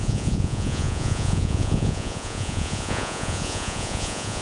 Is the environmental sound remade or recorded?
remade